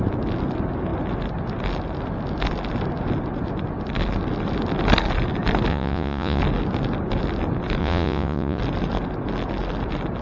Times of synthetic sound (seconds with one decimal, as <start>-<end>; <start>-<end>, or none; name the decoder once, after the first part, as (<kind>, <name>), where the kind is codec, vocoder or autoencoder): 5.7-6.4 (vocoder, Vocos); 7.8-8.6